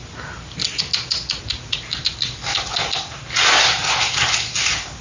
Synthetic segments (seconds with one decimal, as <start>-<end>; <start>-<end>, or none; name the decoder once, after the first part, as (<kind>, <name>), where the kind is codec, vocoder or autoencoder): none